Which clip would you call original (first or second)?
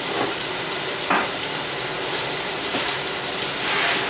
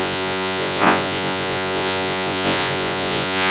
first